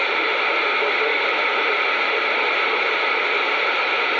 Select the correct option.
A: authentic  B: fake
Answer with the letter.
A